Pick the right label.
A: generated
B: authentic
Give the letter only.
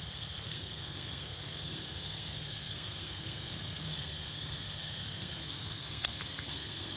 A